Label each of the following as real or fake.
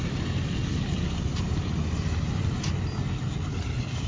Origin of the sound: real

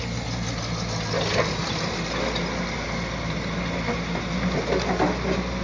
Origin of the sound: real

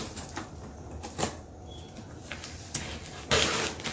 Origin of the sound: real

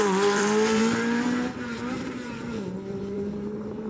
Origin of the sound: fake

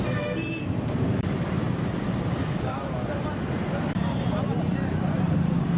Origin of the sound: fake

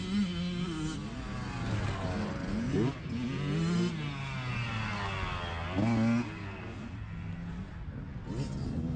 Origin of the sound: real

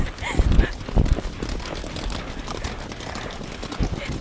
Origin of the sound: real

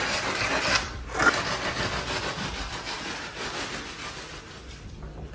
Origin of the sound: real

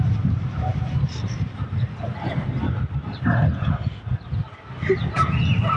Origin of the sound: real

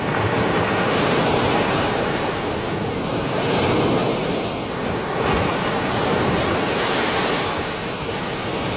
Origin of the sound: real